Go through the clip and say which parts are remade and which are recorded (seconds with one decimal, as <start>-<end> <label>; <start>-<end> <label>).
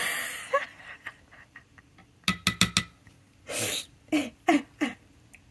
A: 0.0-5.5 recorded